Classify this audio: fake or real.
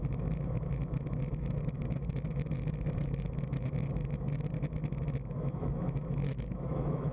fake